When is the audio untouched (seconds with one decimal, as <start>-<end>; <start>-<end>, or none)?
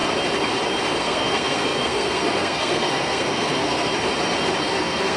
0.0-1.0; 3.9-4.6